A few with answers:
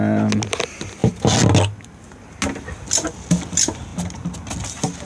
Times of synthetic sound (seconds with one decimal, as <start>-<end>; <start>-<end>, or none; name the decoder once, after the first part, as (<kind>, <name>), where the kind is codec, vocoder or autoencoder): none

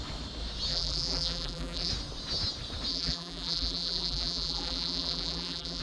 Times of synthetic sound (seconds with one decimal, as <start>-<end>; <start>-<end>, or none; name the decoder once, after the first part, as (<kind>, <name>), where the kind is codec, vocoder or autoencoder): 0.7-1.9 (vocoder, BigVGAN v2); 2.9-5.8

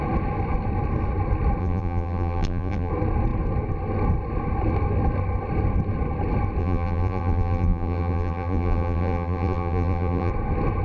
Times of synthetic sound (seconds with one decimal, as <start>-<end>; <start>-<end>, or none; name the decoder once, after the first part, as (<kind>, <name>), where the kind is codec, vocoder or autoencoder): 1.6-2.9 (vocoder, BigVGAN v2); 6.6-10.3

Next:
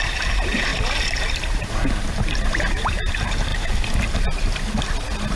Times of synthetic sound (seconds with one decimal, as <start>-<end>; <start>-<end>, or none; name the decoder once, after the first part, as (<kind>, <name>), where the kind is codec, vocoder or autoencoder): 0.0-3.5 (vocoder, BigVGAN v2)

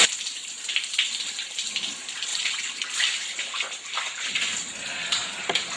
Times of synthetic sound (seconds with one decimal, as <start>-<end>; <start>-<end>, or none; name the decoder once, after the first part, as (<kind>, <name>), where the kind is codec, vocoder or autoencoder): 0.4-1.2 (vocoder, BigVGAN v2); 2.3-3.0; 5.2-5.8

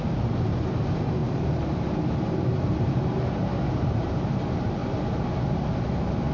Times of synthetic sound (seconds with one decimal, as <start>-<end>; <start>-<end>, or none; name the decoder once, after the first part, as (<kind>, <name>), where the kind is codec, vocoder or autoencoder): 0.0-4.8 (vocoder, BigVGAN v2)